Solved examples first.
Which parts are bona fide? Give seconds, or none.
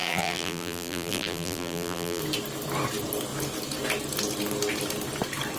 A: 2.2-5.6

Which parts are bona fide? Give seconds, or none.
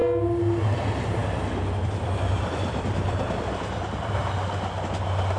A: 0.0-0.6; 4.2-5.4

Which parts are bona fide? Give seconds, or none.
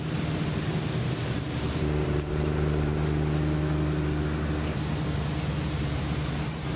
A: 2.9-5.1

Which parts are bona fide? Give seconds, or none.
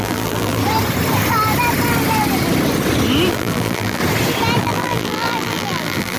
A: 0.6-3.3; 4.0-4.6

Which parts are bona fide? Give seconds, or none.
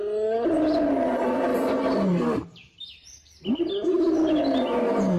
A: 0.0-5.2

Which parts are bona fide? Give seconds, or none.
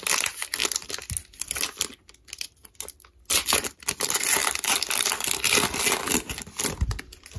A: 0.0-7.4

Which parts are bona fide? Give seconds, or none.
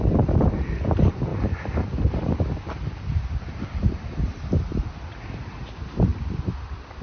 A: none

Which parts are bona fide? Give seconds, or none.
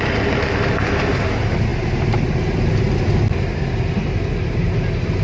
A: 0.0-5.2